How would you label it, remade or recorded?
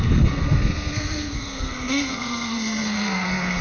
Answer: remade